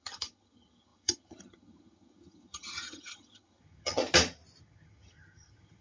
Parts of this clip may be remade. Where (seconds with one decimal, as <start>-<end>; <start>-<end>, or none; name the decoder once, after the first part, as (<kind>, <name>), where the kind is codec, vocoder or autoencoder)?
0.0-4.0 (vocoder, HiFi-GAN); 4.6-5.8